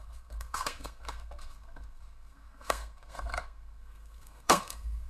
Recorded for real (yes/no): no